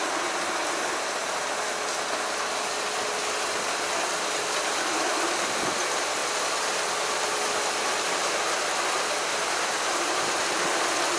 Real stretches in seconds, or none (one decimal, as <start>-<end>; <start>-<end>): 0.0-6.2; 8.2-11.2